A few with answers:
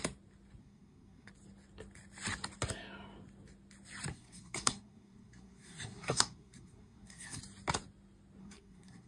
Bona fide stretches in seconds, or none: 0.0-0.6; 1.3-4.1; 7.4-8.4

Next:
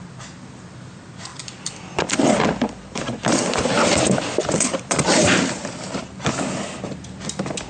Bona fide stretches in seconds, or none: 5.6-7.7

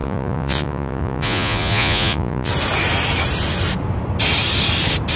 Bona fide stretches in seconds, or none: 2.5-5.2

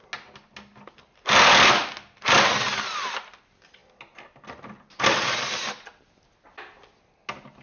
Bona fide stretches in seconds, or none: 0.0-7.6

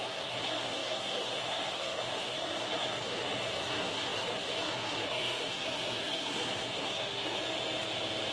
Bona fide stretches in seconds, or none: 7.4-8.3

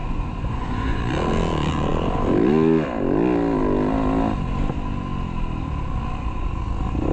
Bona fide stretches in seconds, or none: 1.0-7.1

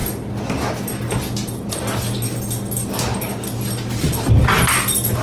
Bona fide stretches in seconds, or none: 0.0-5.2